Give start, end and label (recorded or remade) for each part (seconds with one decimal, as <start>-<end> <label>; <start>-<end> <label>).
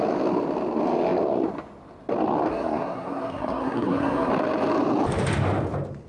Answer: 0.0-2.5 recorded; 2.5-4.3 remade; 4.3-6.1 recorded